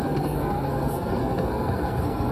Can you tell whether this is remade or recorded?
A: remade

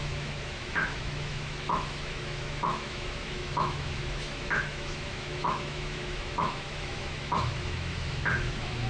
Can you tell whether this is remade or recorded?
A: remade